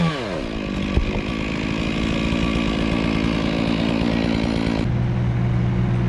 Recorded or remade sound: recorded